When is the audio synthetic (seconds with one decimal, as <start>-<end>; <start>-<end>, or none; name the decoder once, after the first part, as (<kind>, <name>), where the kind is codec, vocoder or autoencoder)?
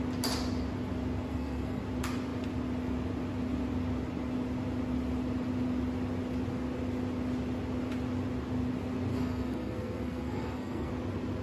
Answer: 1.3-1.8 (codec, SNAC); 9.1-10.9